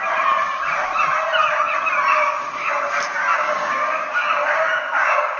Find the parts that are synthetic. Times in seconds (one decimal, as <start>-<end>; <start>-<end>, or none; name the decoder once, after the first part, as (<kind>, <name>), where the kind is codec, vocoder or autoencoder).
2.1-2.7 (codec, DAC); 3.3-5.4